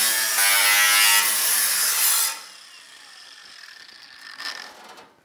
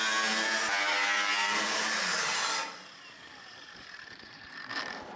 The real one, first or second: first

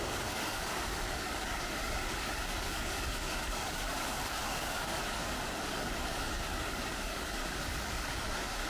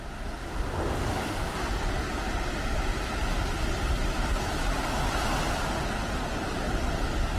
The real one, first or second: second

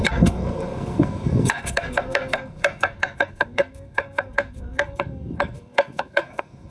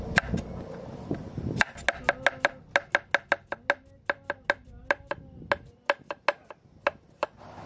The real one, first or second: second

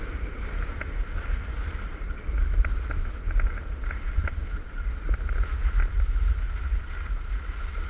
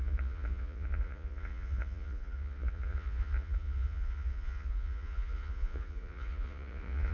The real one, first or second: first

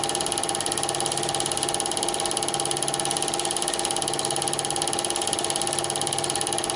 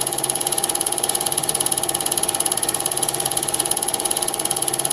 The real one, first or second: first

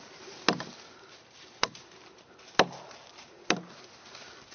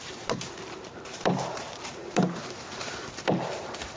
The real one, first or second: first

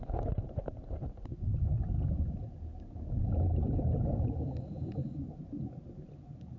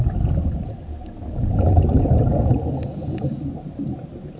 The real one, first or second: second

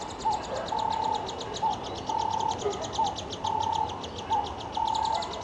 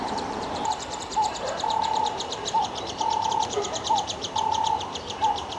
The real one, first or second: first